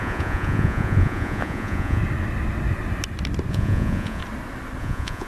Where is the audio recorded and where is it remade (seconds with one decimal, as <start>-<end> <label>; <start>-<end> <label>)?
0.0-2.0 remade; 2.0-3.5 recorded; 3.5-4.2 remade; 4.2-4.8 recorded; 4.8-5.3 remade